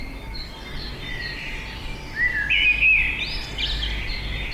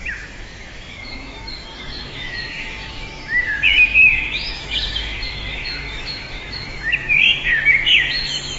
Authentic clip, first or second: first